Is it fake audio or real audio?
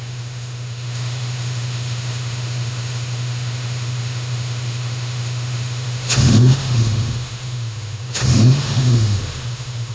fake